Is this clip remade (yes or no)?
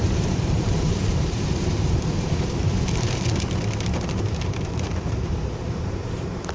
yes